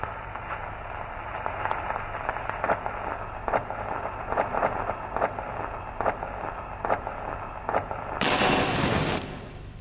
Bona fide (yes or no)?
yes